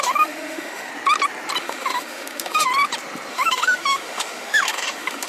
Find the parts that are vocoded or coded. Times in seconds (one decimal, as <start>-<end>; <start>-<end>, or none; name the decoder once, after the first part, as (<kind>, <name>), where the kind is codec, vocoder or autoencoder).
0.0-0.9 (autoencoder, DAC-VAE); 1.6-2.7; 3.3-5.3